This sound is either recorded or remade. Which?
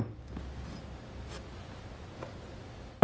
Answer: recorded